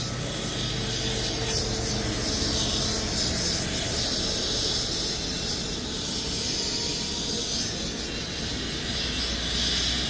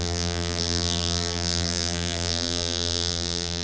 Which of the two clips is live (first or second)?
first